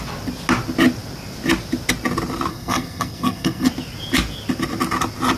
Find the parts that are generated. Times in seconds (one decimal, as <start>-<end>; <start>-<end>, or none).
2.5-3.7